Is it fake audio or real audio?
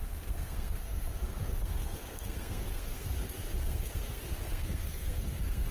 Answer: fake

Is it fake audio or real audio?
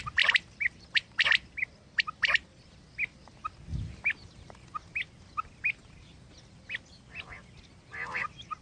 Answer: real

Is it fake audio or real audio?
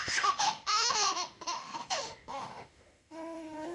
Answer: fake